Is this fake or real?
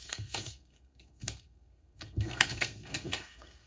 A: fake